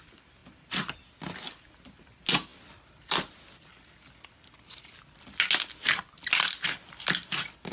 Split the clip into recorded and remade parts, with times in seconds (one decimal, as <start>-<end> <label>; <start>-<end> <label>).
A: 0.0-7.7 recorded